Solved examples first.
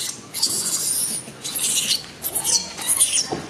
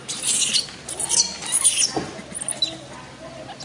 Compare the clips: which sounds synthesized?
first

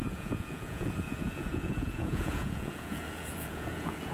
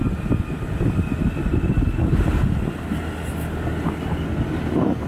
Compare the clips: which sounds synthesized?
first